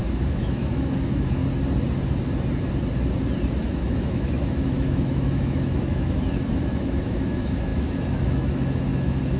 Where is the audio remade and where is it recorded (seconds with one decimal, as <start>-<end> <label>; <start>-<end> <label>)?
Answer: 0.0-1.4 remade; 1.4-3.8 recorded; 3.8-9.4 remade